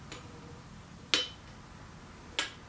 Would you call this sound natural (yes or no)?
yes